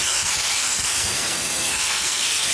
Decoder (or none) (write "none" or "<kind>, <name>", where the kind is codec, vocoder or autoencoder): codec, SNAC